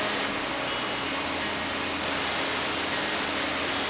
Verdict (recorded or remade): recorded